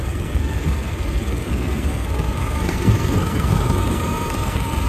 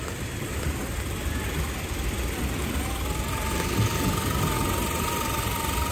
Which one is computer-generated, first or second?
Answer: first